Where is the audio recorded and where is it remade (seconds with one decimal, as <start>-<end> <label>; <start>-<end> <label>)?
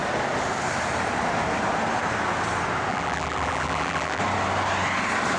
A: 0.0-2.9 recorded; 2.9-4.2 remade; 4.2-5.4 recorded